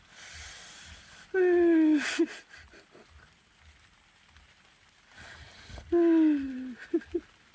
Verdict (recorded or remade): recorded